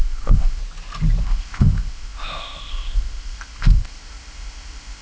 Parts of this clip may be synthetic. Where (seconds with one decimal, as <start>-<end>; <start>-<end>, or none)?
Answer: 0.0-0.6; 1.2-5.0